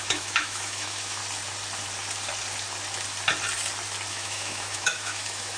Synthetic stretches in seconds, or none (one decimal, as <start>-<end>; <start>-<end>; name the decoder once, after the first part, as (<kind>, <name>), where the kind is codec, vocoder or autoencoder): 0.0-1.2 (autoencoder, DAC-VAE); 4.1-5.6